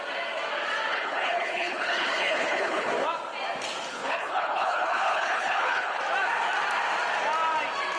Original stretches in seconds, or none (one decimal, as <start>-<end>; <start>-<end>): 0.0-0.9; 2.9-3.9; 6.0-8.0